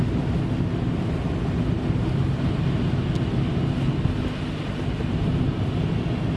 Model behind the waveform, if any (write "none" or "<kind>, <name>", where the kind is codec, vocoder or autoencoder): none